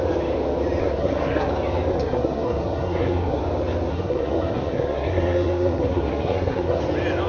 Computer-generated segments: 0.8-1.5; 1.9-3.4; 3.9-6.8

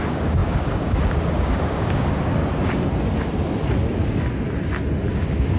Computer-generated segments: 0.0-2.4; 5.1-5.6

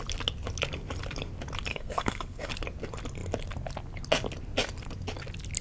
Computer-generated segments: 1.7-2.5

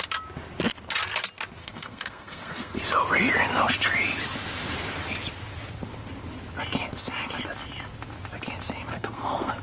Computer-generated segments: 1.6-2.8; 8.9-9.6